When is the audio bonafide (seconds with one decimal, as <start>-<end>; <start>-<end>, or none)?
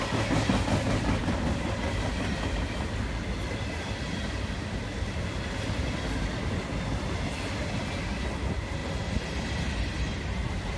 0.0-10.8